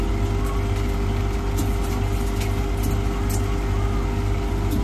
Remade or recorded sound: recorded